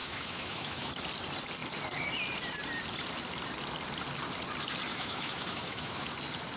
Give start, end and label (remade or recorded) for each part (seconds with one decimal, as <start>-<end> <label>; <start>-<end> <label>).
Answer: 0.0-0.9 remade; 0.9-4.9 recorded; 4.9-6.0 remade; 6.0-6.6 recorded